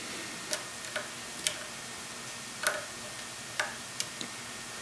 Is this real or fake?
real